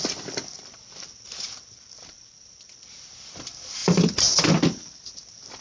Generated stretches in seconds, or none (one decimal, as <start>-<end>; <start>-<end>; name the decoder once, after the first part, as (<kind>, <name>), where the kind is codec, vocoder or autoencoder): none

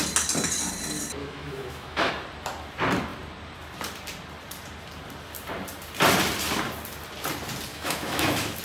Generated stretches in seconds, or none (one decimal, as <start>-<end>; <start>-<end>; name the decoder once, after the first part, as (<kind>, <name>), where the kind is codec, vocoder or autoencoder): 1.2-2.1 (autoencoder, DAC-VAE); 7.7-8.6